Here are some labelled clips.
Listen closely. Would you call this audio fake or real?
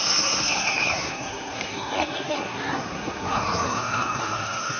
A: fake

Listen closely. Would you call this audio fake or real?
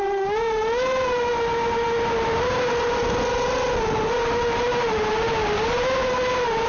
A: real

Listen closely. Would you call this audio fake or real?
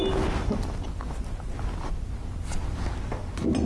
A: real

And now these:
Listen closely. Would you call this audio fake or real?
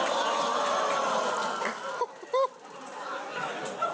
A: real